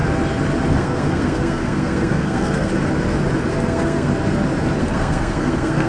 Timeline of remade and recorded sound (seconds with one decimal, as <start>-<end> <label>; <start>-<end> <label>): 0.0-0.7 recorded; 0.7-2.7 remade; 2.7-3.5 recorded; 3.5-4.1 remade; 4.1-4.8 recorded; 4.8-5.9 remade